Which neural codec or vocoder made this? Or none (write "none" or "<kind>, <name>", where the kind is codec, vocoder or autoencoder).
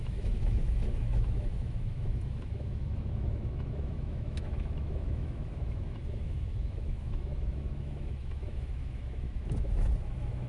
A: autoencoder, DAC-VAE